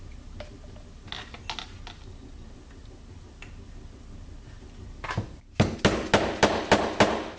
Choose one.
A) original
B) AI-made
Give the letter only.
A